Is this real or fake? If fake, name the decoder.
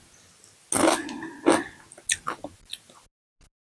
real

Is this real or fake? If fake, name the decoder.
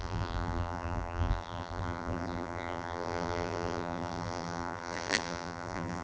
fake, vocoder, BigVGAN v2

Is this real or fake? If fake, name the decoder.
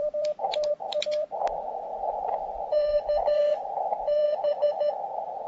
fake, vocoder, BigVGAN v2